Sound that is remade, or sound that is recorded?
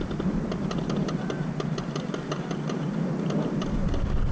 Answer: recorded